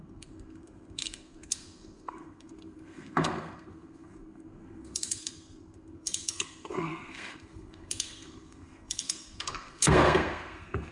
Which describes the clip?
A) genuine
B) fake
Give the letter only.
B